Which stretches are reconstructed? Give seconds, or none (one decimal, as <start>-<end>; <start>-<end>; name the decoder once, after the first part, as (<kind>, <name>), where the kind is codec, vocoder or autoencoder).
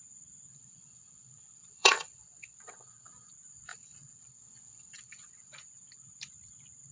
0.5-3.3 (vocoder, WaveNeXt); 3.7-5.5